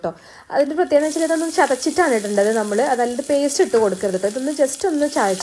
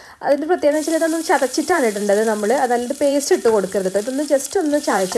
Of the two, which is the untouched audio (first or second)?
first